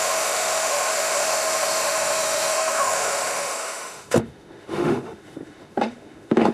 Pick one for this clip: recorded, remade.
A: remade